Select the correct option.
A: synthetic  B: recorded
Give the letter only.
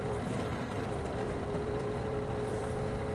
A